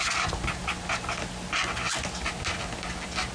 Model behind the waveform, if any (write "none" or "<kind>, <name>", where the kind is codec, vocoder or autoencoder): none